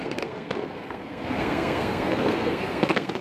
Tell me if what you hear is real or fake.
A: fake